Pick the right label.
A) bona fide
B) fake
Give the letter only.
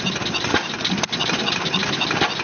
A